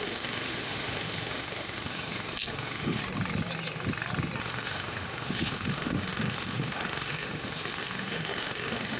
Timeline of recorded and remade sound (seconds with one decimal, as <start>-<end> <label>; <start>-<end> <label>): 0.0-3.0 remade; 3.0-4.4 recorded; 4.4-9.0 remade